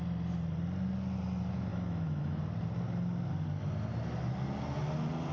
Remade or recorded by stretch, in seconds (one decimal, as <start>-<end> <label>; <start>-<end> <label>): 0.0-1.7 recorded; 1.7-2.4 remade; 2.4-5.3 recorded